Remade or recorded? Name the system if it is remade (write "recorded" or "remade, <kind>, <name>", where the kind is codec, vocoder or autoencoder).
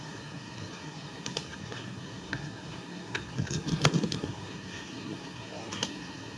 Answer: remade, codec, SNAC